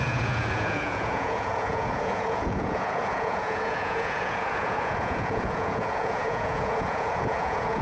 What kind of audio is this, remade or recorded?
remade